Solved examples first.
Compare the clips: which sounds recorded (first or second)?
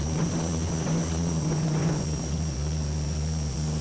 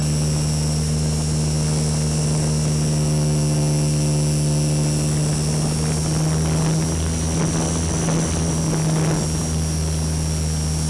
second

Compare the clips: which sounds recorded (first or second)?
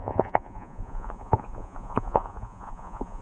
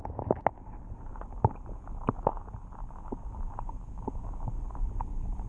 second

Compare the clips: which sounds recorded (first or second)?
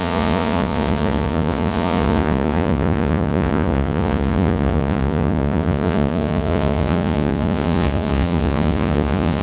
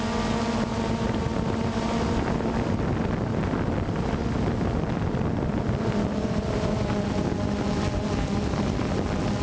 second